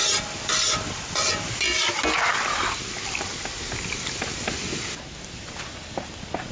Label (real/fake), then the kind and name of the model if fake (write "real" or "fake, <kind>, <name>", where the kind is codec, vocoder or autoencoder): real